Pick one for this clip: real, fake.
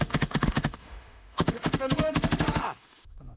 fake